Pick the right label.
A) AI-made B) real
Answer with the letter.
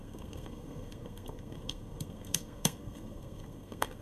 A